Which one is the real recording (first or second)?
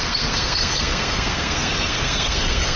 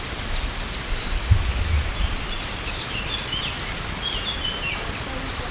second